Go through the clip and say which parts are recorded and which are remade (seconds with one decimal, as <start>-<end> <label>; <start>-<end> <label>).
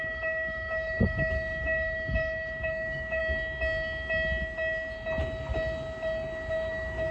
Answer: 0.0-3.2 remade; 3.2-6.5 recorded; 6.5-7.1 remade